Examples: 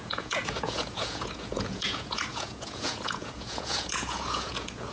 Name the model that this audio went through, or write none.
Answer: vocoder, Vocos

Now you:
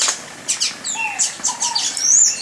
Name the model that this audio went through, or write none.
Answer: none